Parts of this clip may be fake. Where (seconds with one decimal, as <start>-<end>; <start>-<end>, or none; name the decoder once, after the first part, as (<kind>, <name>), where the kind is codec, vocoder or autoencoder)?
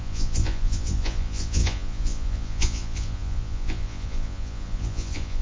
0.0-5.4 (vocoder, Vocos)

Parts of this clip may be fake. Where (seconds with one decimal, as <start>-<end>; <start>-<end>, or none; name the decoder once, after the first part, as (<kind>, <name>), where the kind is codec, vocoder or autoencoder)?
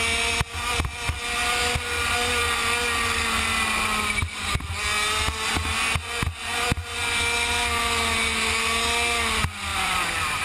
9.7-10.4 (vocoder, BigVGAN v2)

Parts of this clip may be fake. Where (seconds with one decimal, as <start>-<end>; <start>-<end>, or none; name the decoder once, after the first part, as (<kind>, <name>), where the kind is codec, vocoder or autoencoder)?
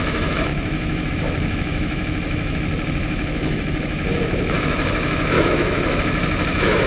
0.0-6.9 (autoencoder, DAC-VAE)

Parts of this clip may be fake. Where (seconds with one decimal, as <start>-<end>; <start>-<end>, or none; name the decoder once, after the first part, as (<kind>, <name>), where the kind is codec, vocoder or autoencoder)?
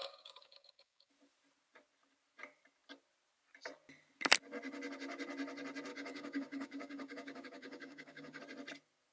0.0-1.1 (codec, DAC); 5.9-8.4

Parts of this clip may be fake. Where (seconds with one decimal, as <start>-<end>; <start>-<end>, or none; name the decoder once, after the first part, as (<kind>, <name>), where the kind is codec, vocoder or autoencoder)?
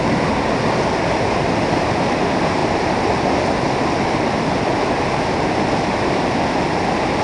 none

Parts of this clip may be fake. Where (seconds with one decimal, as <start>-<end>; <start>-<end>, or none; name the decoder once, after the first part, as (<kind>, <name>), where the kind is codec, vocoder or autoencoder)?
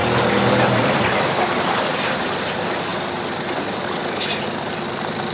0.0-2.3 (vocoder, BigVGAN v2)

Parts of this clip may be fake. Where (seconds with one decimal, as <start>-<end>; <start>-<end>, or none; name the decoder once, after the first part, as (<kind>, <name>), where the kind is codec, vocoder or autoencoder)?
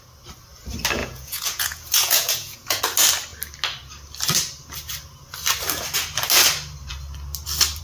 1.0-2.8 (vocoder, Vocos)